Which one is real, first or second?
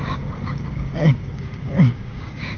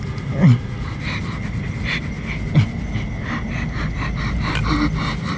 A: second